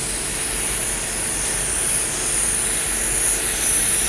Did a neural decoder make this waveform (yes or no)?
no